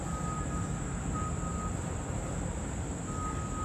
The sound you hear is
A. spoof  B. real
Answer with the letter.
B